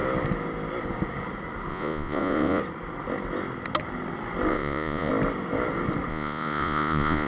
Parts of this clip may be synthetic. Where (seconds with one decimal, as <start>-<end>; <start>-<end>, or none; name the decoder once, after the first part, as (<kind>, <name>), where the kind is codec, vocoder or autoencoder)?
1.7-2.6 (vocoder, Vocos); 4.5-5.1; 6.1-7.3